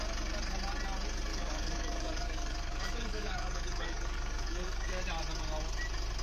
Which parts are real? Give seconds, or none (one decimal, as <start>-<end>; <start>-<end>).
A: 0.0-1.3; 5.0-6.2